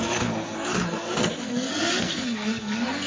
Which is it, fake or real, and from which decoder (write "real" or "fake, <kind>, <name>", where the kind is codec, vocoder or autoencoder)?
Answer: fake, codec, SNAC